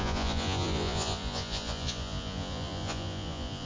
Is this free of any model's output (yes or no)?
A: no